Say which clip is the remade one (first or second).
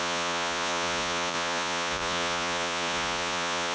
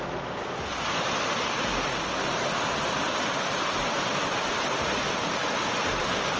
first